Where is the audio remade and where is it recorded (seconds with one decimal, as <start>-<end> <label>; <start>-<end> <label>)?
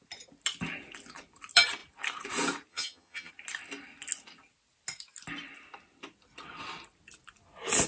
0.0-2.7 recorded; 2.7-3.3 remade; 3.3-7.9 recorded